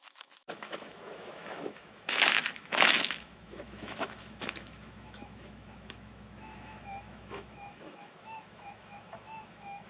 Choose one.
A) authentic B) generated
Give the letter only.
B